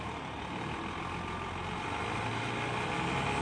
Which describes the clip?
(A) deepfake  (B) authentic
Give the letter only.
B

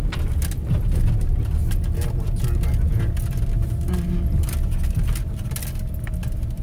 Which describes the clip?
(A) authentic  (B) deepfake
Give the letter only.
A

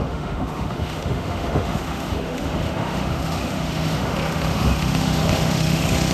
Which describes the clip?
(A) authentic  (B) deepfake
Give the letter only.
B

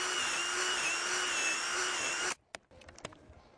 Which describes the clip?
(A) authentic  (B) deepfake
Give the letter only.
A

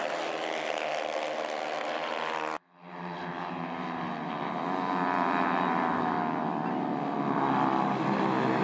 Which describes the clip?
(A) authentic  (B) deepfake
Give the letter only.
A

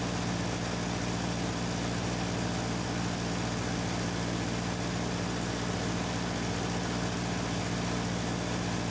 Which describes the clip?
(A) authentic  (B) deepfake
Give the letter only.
A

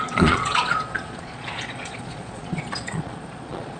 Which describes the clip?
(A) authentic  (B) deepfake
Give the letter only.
B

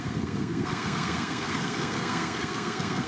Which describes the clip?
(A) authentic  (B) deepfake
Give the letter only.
B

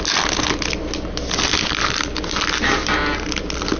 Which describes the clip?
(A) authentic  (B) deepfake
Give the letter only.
A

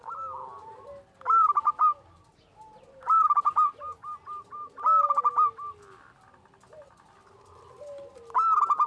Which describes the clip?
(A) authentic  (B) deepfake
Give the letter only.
A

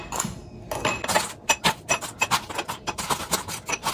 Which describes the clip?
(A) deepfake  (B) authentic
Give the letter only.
B